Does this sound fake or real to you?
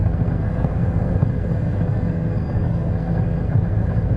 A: fake